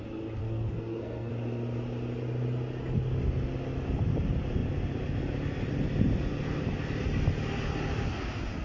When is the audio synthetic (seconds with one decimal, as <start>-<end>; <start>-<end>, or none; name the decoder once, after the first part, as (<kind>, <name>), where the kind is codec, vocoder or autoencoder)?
0.4-1.3 (codec, SNAC)